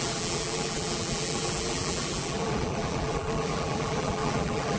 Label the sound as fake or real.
fake